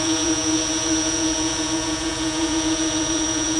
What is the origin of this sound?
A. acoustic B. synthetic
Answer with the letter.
B